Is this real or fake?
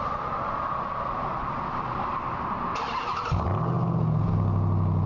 real